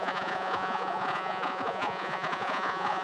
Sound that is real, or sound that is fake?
fake